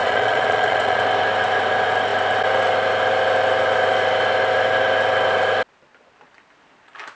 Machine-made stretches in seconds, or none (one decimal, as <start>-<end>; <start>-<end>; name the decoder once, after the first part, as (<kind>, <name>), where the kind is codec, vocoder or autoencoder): 0.0-1.0 (vocoder, Vocos)